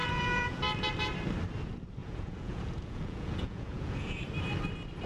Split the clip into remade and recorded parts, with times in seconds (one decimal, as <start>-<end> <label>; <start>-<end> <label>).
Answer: 0.0-0.6 remade; 0.6-2.0 recorded; 2.0-4.2 remade; 4.2-5.1 recorded